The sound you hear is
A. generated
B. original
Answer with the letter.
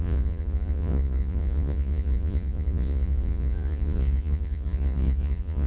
A